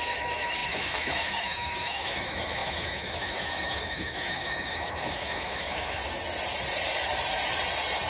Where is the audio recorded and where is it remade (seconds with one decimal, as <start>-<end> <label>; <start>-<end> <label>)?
0.0-6.0 remade; 6.0-8.1 recorded